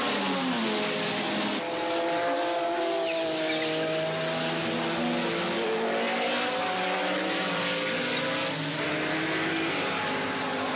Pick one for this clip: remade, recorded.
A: recorded